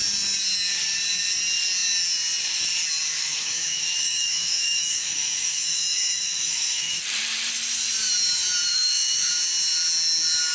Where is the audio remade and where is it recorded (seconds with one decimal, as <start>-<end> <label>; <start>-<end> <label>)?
0.0-3.2 recorded; 3.2-7.0 remade; 7.0-8.7 recorded; 8.7-9.3 remade; 9.3-10.5 recorded